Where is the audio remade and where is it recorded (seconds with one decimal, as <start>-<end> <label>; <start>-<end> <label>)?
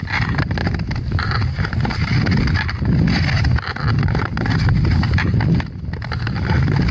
0.0-6.9 recorded